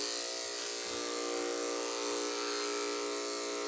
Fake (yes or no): no